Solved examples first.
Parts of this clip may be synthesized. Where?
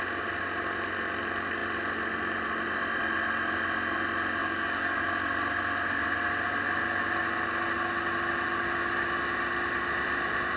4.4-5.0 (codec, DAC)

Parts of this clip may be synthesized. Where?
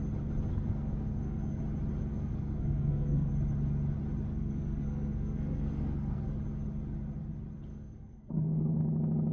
0.5-1.6 (codec, SNAC); 2.1-3.3; 4.3-6.3; 7.7-8.8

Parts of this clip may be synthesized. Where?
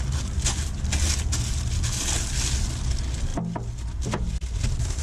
none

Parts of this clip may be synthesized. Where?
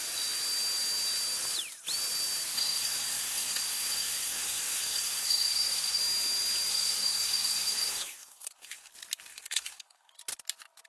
2.5-6.0 (codec, SNAC); 6.7-8.9; 9.3-10.1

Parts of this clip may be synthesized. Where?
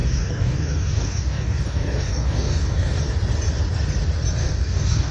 0.0-3.0 (codec, DAC); 4.4-5.1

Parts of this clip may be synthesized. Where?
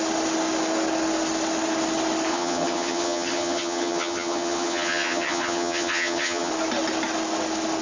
2.3-6.5 (vocoder, HiFi-GAN)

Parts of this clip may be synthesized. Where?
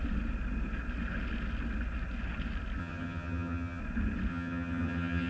2.8-3.8 (vocoder, HiFi-GAN); 4.3-5.3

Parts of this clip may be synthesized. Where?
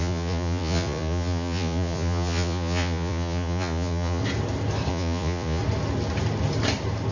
0.0-4.2 (vocoder, Vocos); 4.9-5.6